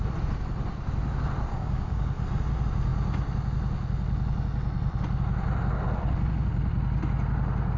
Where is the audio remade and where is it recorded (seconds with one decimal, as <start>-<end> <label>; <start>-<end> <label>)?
0.0-1.5 recorded; 1.5-2.2 remade; 2.2-7.8 recorded